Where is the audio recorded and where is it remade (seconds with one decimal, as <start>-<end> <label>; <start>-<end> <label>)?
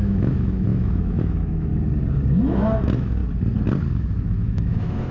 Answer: 0.0-1.7 remade; 1.7-2.3 recorded; 2.3-3.2 remade; 3.2-3.9 recorded; 3.9-5.1 remade